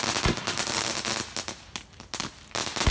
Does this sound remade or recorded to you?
recorded